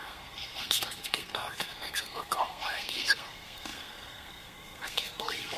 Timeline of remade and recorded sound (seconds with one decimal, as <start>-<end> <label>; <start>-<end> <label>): 0.0-5.6 remade